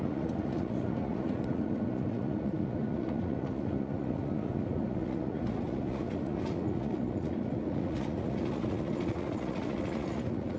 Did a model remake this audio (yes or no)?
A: yes